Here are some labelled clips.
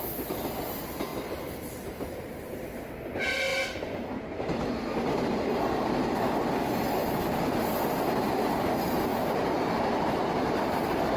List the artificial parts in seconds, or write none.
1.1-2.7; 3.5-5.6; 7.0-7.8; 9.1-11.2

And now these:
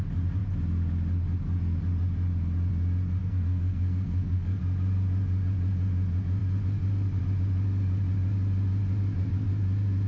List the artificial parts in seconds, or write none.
3.2-4.6

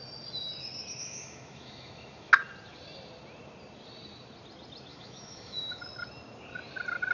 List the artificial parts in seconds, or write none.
1.0-2.3; 4.9-5.8

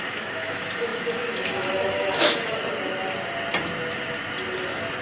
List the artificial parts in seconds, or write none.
0.0-2.6

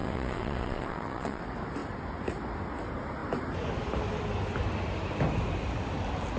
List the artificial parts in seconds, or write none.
0.0-1.4

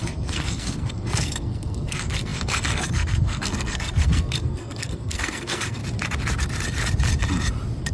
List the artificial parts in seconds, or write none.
0.0-5.8

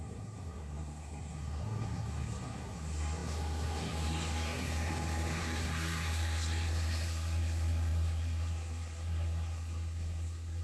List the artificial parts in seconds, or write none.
0.0-10.6